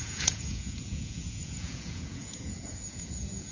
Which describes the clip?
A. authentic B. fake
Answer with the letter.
B